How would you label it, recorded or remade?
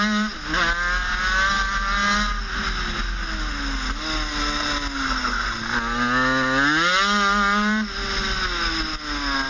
recorded